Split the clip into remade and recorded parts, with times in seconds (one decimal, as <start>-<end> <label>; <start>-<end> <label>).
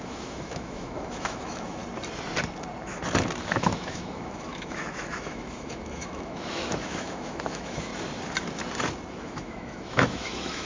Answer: 0.0-1.8 remade; 1.8-3.4 recorded; 3.4-7.9 remade; 7.9-9.1 recorded; 9.1-10.7 remade